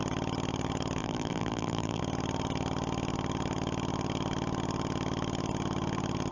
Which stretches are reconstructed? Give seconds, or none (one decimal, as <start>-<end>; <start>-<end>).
1.0-2.0